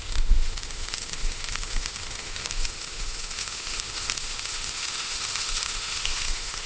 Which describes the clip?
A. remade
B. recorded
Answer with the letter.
A